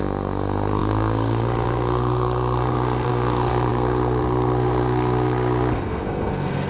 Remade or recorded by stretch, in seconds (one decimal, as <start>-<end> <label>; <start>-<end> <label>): 0.0-6.7 remade